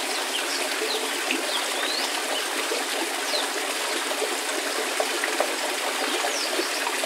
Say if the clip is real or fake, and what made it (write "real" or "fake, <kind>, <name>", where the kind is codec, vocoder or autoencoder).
real